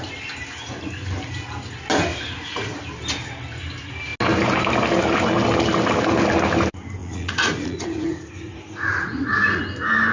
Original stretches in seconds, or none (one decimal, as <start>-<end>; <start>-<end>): 0.0-2.1; 2.8-7.0; 9.6-10.1